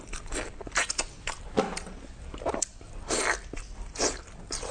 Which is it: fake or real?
real